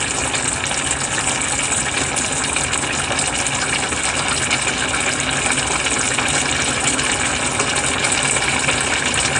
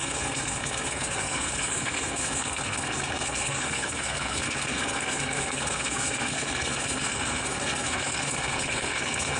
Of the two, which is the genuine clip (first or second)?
first